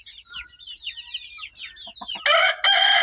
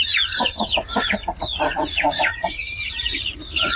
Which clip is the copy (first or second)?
second